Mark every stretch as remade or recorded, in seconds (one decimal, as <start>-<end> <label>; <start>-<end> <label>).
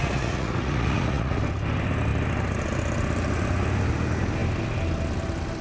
0.0-1.4 remade; 1.4-5.6 recorded